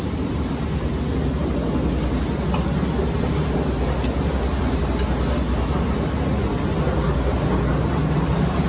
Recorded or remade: recorded